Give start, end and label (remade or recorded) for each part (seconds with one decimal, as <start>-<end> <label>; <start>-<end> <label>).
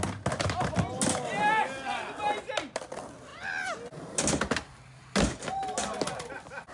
0.0-6.7 recorded